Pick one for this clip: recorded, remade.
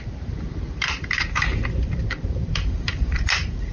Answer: remade